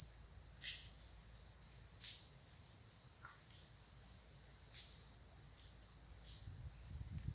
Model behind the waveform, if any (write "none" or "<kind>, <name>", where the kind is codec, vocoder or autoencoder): none